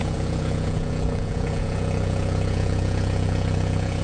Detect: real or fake fake